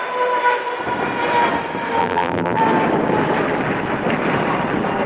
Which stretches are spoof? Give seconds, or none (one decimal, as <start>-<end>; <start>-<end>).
2.0-2.6